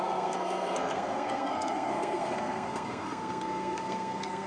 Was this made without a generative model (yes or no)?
no